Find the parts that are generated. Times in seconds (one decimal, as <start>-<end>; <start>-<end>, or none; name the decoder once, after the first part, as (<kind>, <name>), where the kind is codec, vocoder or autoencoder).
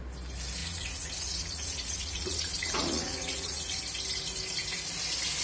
0.6-3.8 (vocoder, Vocos)